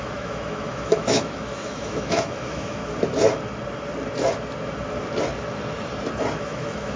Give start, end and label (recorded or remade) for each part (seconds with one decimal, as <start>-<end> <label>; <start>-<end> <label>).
0.0-2.8 remade; 2.8-6.4 recorded; 6.4-7.0 remade